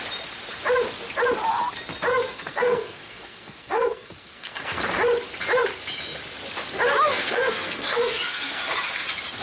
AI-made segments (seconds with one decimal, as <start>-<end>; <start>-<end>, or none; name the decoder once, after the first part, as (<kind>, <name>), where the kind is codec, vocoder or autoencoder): 2.1-4.8 (codec, SNAC); 7.1-8.6

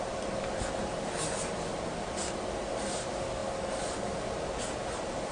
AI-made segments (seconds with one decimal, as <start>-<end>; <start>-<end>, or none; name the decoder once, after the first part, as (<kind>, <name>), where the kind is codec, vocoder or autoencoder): none

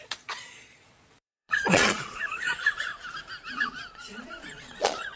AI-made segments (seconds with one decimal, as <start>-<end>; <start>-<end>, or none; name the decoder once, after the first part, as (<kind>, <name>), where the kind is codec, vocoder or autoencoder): 0.0-2.9 (vocoder, Vocos); 3.5-5.2

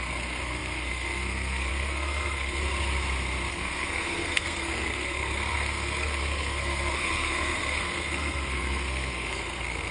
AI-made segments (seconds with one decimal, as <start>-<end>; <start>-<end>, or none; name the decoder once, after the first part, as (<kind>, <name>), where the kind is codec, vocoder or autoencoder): 0.0-2.6 (codec, SNAC); 3.5-9.9

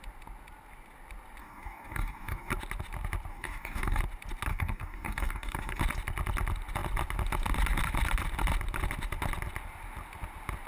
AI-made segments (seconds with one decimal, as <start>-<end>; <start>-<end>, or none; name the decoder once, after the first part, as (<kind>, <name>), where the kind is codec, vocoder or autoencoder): 1.4-2.5 (codec, DAC); 3.3-4.0; 4.5-5.8

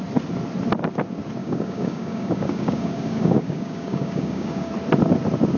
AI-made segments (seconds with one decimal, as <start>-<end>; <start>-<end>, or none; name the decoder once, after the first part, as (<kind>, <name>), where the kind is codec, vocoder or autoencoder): 1.4-4.7 (codec, DAC)

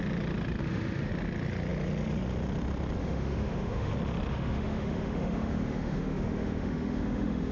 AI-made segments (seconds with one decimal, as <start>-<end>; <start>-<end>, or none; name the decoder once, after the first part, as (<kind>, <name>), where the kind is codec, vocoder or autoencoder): 0.6-1.1 (autoencoder, DAC-VAE); 3.0-3.9; 4.3-7.5

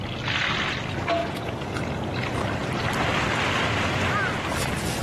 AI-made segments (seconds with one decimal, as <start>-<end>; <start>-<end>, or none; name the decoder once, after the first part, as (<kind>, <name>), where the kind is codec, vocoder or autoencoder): 1.2-1.8 (vocoder, Vocos)